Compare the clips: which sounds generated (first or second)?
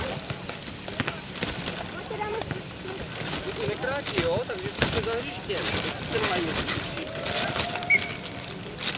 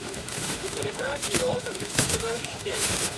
second